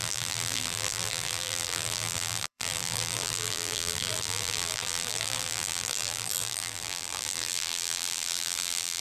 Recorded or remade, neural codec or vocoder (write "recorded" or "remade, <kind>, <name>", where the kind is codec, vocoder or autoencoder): remade, vocoder, BigVGAN v2